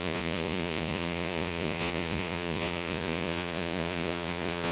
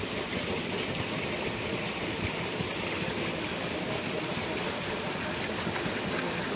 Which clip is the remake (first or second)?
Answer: first